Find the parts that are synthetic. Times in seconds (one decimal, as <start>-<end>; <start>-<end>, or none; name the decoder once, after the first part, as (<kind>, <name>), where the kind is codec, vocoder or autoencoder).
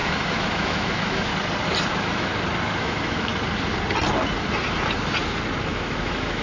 0.0-1.3 (autoencoder, DAC-VAE); 1.9-2.3; 2.8-3.3; 5.6-6.4